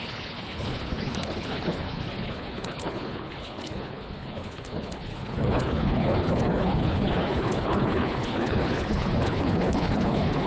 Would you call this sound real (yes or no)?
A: no